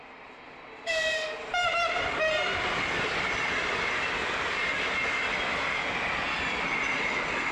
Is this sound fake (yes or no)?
no